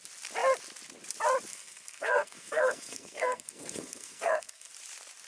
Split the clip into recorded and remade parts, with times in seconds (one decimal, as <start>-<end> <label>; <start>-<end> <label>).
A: 0.0-1.5 recorded; 1.5-4.7 remade; 4.7-5.3 recorded